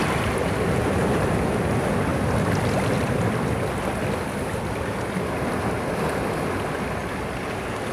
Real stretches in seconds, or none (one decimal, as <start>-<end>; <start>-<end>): 0.0-7.9